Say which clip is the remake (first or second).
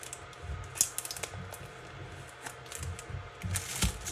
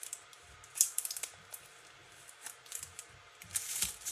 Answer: second